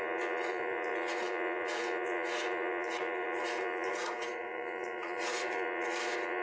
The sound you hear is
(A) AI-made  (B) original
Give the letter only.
A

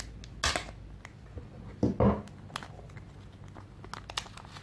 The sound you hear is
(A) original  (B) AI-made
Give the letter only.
A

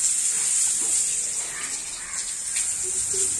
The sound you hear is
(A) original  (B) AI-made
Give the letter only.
A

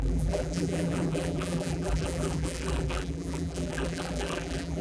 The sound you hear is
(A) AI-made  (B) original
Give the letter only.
A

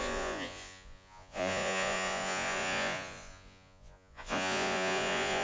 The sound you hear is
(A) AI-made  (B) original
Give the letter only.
A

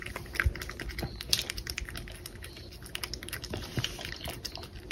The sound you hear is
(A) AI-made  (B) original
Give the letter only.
B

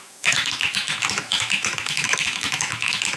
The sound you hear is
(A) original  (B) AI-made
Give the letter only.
B